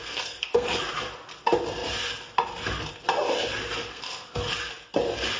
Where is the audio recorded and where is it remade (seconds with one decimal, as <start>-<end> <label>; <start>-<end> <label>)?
0.0-0.8 remade; 0.8-3.9 recorded; 3.9-4.4 remade; 4.4-5.4 recorded